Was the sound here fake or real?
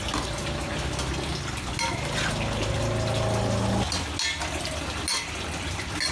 real